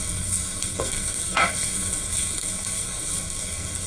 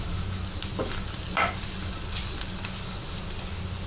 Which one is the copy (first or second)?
first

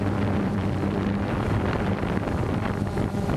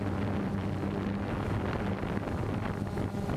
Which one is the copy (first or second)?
first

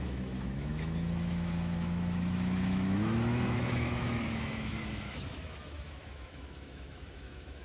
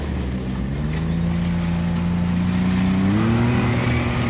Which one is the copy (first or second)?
first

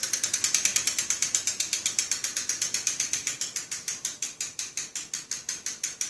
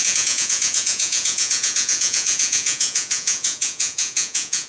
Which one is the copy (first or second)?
second